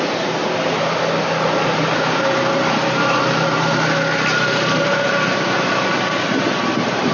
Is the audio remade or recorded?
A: recorded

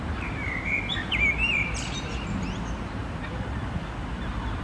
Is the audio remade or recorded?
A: remade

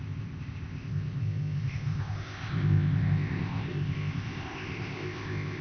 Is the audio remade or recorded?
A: remade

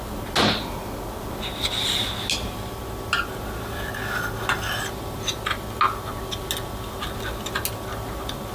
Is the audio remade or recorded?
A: recorded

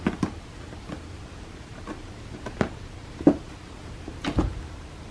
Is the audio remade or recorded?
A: recorded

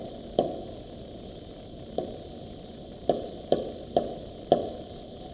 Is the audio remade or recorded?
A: recorded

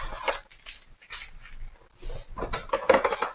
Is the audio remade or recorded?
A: recorded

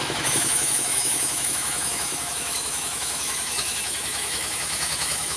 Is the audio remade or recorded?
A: remade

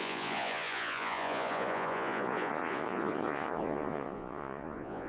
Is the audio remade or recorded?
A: remade